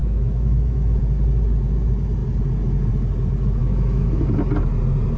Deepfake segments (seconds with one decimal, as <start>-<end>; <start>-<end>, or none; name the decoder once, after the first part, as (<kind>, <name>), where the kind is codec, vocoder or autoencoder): 0.0-1.0 (autoencoder, DAC-VAE); 3.6-4.2

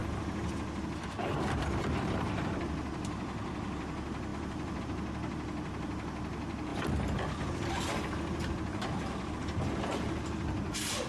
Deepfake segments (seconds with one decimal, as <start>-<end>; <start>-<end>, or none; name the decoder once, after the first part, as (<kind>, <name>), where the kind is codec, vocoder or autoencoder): 0.0-1.8 (vocoder, BigVGAN v2); 4.3-4.8

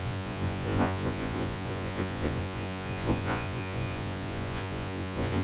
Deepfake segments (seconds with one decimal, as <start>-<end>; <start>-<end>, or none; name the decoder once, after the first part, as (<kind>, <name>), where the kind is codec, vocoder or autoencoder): 0.0-5.4 (vocoder, Vocos)

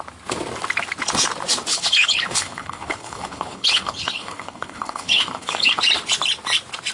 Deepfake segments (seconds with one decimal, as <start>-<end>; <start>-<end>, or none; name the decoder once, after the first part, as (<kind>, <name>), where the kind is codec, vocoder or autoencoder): 1.7-5.8 (codec, HILCodec)

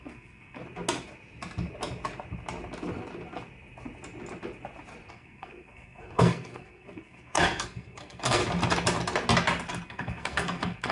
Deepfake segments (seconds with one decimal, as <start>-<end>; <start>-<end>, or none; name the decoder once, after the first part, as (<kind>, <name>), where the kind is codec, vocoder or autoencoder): 0.0-0.6 (codec, SNAC); 5.1-8.4; 9.7-10.9

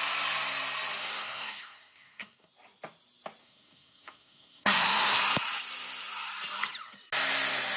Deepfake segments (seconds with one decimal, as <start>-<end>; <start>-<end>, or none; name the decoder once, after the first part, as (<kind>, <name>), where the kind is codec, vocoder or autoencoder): 1.0-2.5 (codec, SNAC); 3.4-5.2

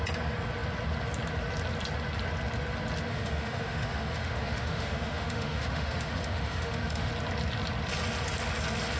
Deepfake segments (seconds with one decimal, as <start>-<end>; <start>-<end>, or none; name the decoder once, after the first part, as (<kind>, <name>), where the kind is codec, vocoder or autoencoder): 3.1-7.1 (autoencoder, DAC-VAE)

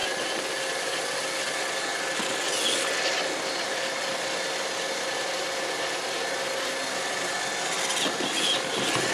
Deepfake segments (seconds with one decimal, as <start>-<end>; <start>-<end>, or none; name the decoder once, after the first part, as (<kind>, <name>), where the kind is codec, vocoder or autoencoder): none